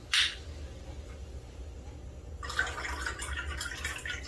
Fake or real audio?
real